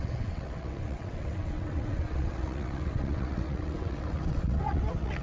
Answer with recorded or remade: remade